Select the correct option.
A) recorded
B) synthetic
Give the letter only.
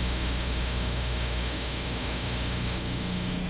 B